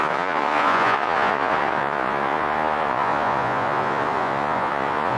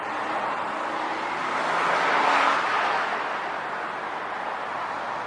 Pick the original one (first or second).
second